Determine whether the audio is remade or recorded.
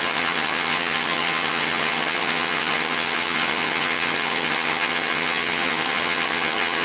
remade